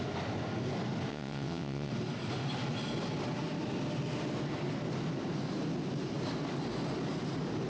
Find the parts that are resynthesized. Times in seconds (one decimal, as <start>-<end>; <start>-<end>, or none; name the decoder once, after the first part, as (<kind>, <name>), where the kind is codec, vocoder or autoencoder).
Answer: 1.1-1.9 (vocoder, WaveNeXt)